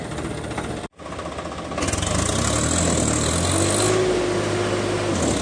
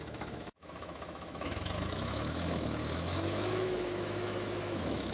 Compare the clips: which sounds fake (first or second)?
second